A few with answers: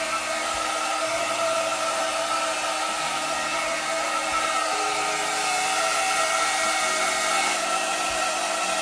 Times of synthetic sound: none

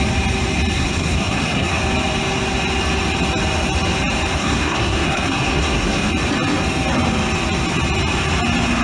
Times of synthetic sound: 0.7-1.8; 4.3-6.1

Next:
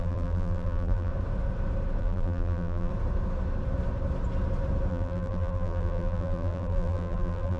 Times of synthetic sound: 0.0-1.1; 2.0-2.9; 4.9-7.6

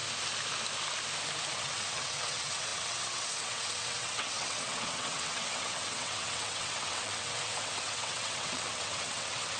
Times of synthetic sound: 1.5-9.6

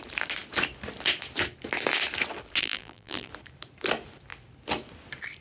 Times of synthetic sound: 2.6-3.3

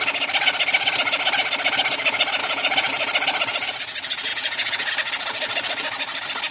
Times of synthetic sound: 2.4-2.9; 4.3-4.9

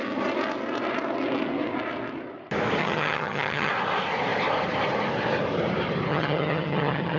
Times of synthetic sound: 2.8-3.7; 6.1-7.2